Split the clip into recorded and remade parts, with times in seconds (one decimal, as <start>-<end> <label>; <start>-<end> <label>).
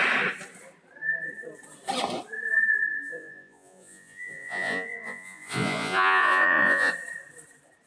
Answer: 0.0-2.9 recorded; 2.9-6.9 remade; 6.9-7.9 recorded